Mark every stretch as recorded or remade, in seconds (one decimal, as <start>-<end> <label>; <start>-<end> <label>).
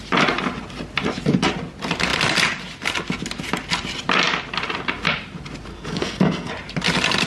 0.0-5.7 recorded; 5.7-6.5 remade; 6.5-7.3 recorded